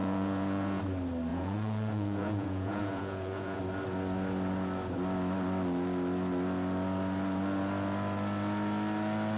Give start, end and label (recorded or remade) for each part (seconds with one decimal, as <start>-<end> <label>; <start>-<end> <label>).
0.0-0.8 remade; 0.8-1.3 recorded; 1.3-3.6 remade; 3.6-9.4 recorded